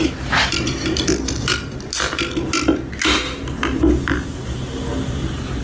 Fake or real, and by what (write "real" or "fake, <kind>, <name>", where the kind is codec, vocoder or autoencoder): real